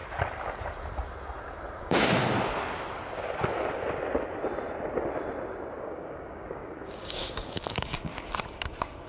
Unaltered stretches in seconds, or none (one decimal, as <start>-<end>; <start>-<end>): 0.0-1.8; 2.2-5.8; 8.1-9.1